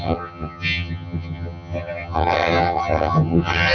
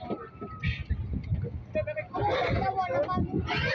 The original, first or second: second